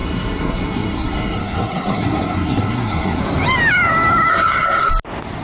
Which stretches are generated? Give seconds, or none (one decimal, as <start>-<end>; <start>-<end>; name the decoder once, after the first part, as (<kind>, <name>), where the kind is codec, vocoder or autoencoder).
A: 0.0-3.2 (codec, SNAC); 4.3-4.9